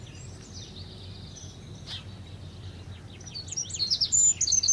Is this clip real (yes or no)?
yes